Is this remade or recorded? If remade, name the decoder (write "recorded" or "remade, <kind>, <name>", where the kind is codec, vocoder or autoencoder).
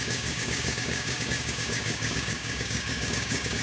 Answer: remade, codec, DAC